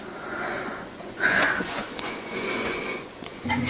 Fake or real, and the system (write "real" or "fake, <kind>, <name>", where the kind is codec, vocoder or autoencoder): fake, vocoder, Vocos